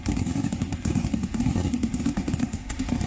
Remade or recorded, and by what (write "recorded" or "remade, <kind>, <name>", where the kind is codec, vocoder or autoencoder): remade, codec, SNAC